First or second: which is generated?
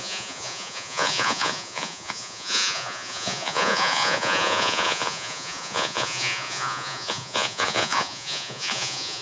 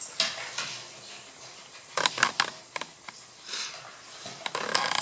first